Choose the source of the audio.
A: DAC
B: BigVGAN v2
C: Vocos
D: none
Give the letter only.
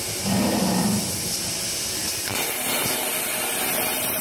D